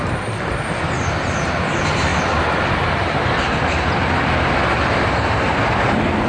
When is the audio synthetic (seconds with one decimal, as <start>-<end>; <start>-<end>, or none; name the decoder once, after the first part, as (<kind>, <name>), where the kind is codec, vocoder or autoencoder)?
0.0-2.1 (vocoder, BigVGAN v2)